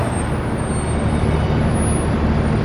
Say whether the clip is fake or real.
real